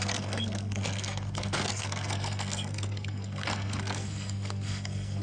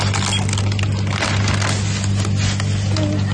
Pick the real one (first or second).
second